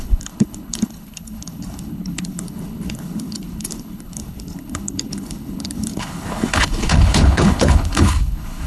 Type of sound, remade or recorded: remade